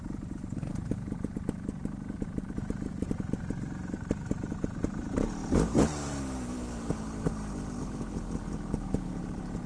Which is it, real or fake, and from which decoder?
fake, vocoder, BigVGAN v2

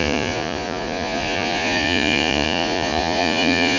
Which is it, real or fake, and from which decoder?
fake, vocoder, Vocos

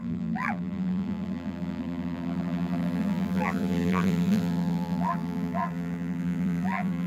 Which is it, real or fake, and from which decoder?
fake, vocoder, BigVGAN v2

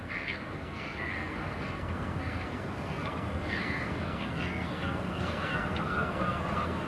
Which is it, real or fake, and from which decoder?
fake, codec, SNAC